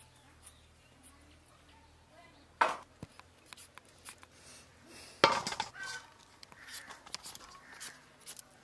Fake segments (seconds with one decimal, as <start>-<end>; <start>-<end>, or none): none